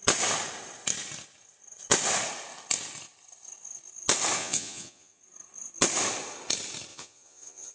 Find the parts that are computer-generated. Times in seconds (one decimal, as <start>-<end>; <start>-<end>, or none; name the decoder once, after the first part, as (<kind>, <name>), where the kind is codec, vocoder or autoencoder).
4.4-5.2 (vocoder, Vocos); 6.9-7.7